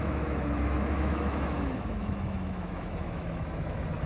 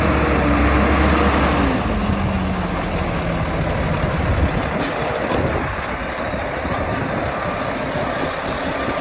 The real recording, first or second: second